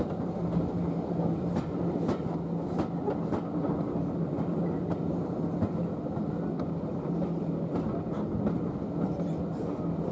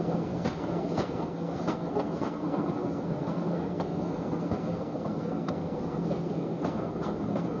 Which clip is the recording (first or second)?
first